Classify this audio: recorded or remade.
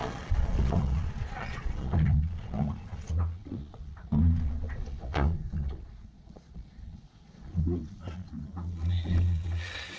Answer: remade